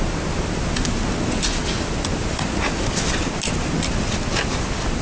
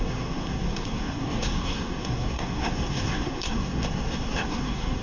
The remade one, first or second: second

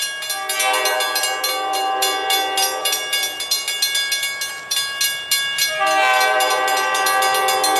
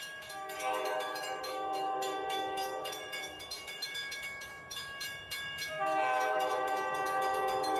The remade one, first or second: second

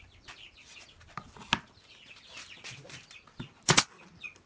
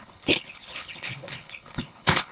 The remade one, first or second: second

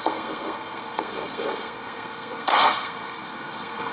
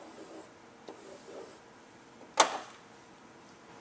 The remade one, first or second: first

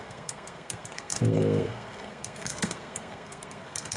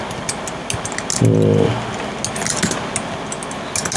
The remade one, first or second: first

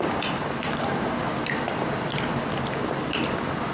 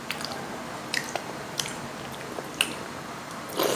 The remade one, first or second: first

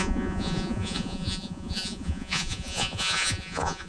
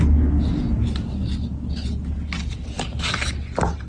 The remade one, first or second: first